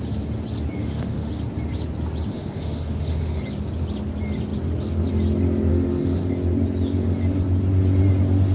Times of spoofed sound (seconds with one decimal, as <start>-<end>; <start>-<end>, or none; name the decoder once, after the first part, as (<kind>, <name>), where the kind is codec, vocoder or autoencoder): 0.8-1.3 (autoencoder, DAC-VAE); 2.3-3.4; 5.7-6.3